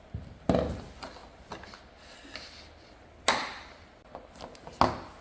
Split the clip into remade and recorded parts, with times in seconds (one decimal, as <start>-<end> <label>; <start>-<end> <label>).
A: 0.0-5.2 recorded